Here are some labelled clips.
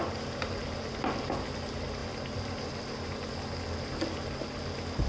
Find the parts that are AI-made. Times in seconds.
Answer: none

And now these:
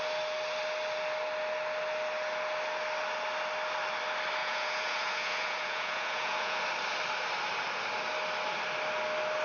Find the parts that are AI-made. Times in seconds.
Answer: 4.4-6.6 (vocoder, Vocos)

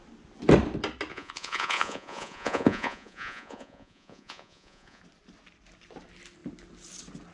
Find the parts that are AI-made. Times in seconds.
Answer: 1.1-5.0 (vocoder, Vocos)

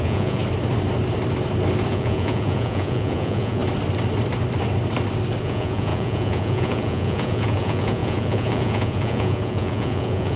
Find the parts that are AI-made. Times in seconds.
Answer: 0.0-0.4 (vocoder, Vocos); 1.9-3.6; 5.4-10.4

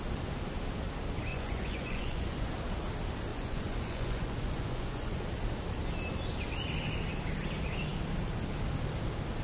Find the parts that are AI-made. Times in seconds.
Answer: 1.3-2.5 (vocoder, Vocos); 3.3-5.2